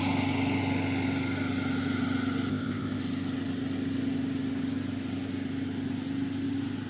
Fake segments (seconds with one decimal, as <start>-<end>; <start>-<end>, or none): 2.5-3.0